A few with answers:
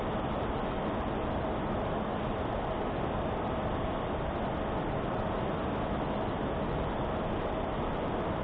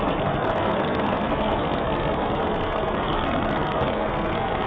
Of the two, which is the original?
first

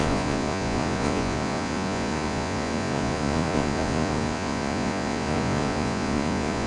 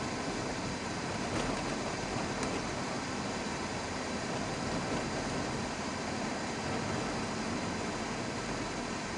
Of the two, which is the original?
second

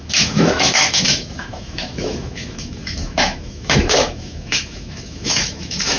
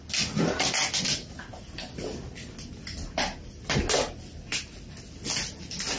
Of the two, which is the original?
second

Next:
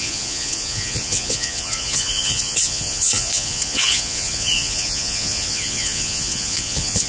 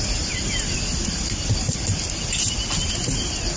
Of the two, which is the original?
second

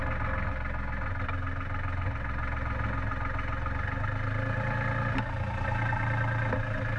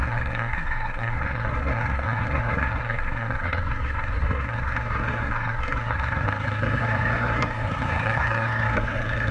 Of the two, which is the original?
first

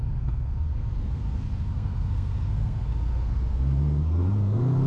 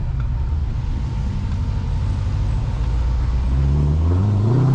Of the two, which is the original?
second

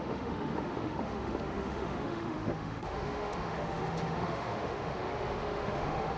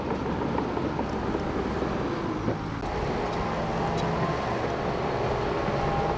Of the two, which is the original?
second